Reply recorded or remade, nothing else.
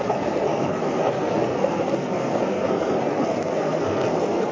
remade